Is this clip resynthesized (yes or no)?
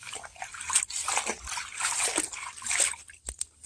no